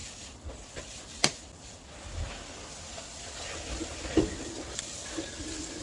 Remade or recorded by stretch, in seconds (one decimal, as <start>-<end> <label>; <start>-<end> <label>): 0.0-5.8 recorded